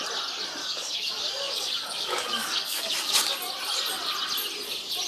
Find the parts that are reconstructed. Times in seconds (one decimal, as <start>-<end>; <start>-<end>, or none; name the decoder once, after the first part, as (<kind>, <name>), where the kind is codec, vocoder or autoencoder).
0.6-3.3 (codec, DAC)

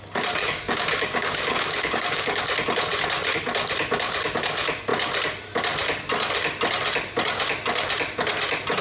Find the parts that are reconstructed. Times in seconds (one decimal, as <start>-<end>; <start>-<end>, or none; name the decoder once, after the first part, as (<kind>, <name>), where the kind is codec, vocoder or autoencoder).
0.4-2.4 (codec, DAC)

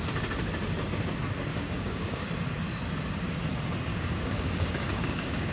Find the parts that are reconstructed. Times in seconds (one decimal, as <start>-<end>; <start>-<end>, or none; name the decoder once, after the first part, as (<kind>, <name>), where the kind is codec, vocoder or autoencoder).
1.5-2.3 (codec, DAC); 3.9-5.5

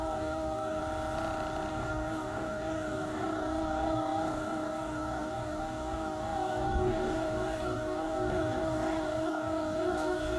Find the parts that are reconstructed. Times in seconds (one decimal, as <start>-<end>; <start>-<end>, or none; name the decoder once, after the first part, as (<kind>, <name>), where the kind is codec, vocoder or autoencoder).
0.0-0.8 (codec, DAC); 1.7-10.4